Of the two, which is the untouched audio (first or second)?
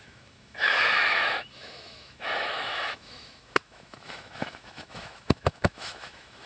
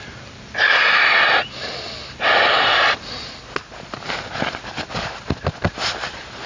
second